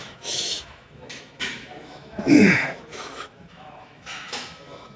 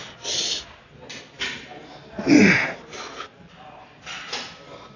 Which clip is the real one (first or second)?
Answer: second